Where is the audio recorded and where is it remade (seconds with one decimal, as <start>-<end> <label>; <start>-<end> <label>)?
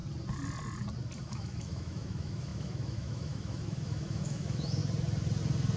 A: 0.0-1.2 recorded; 1.2-4.8 remade; 4.8-5.8 recorded